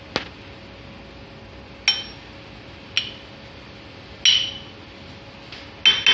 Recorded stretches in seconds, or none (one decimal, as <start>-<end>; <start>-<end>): 0.0-6.1